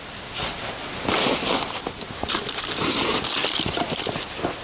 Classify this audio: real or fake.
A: real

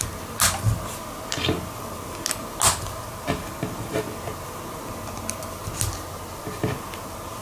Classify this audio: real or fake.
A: real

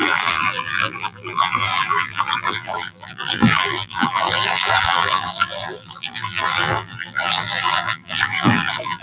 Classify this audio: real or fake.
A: fake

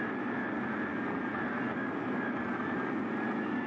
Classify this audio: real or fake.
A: real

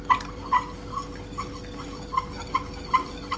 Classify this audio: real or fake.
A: real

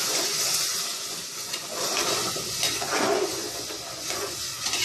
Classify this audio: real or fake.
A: fake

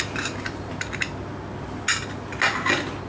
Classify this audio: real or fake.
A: real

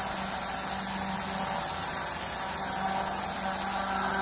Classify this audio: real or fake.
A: real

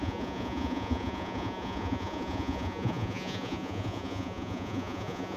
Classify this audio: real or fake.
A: fake